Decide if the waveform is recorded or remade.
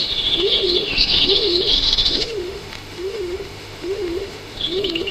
remade